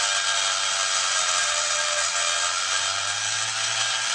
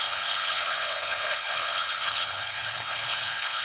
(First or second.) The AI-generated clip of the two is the second